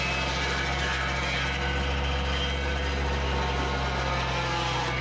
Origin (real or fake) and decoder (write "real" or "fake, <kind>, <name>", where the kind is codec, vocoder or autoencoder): real